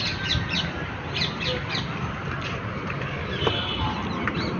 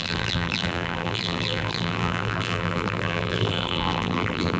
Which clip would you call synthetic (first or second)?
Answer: second